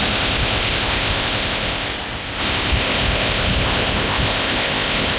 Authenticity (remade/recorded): remade